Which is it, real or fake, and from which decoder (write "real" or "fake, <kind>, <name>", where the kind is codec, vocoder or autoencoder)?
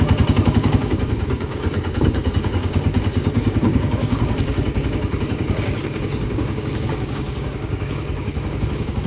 fake, codec, DAC